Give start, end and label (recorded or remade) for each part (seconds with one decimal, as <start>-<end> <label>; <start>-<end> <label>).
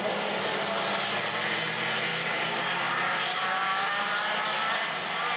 0.0-2.1 recorded; 2.1-2.9 remade; 2.9-3.3 recorded; 3.3-4.0 remade; 4.0-5.4 recorded